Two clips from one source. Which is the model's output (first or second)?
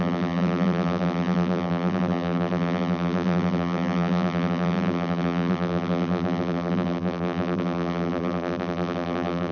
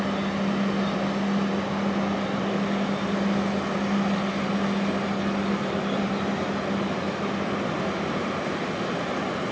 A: first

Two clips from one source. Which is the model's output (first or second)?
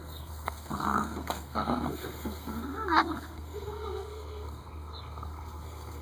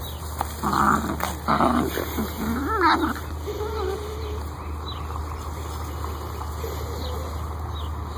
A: first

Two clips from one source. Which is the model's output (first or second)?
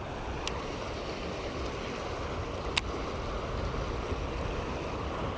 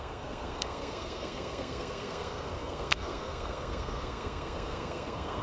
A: second